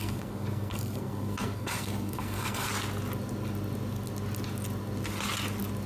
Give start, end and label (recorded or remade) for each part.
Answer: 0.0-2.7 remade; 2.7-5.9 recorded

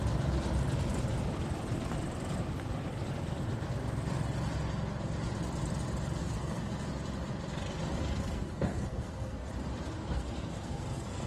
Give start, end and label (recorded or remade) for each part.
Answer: 0.0-6.2 recorded; 6.2-6.9 remade; 6.9-7.9 recorded; 7.9-9.5 remade; 9.5-10.0 recorded; 10.0-11.3 remade

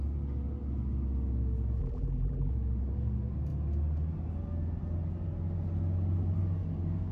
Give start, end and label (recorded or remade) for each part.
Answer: 0.0-1.8 recorded; 1.8-2.5 remade; 2.5-7.1 recorded

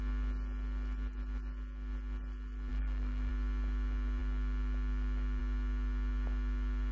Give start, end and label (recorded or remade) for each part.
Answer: 0.0-2.7 recorded; 2.7-3.3 remade; 3.3-6.9 recorded

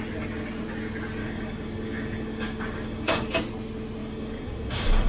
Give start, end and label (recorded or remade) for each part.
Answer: 0.0-1.2 recorded; 1.2-3.3 remade; 3.3-4.0 recorded; 4.0-5.1 remade

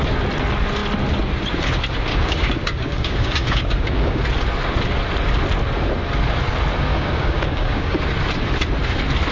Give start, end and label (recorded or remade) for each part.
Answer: 0.0-2.1 recorded; 2.1-4.2 remade; 4.2-6.9 recorded; 6.9-8.0 remade; 8.0-9.3 recorded

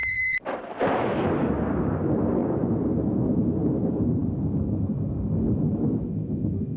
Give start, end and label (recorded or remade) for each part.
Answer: 0.0-1.3 remade; 1.3-2.4 recorded; 2.4-3.0 remade; 3.0-6.8 recorded

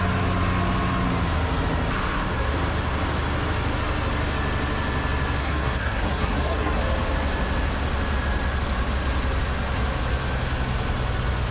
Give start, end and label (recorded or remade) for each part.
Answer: 0.0-5.4 recorded; 5.4-6.8 remade; 6.8-11.5 recorded